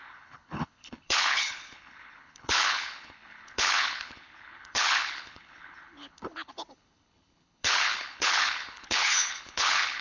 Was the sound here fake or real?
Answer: fake